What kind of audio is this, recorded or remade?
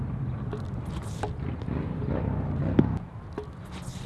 recorded